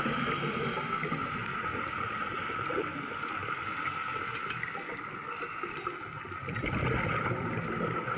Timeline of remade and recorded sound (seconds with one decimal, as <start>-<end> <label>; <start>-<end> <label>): 0.0-1.5 recorded; 1.5-2.8 remade; 2.8-8.2 recorded